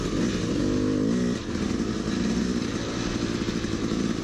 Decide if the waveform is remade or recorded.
recorded